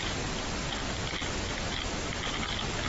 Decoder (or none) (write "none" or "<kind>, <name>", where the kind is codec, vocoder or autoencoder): none